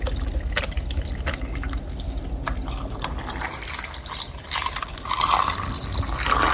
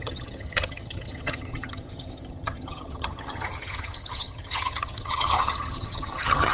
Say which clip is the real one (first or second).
first